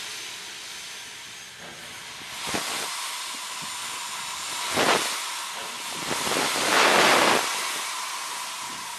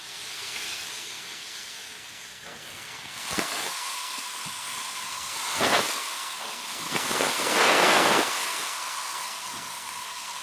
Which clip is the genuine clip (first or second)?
first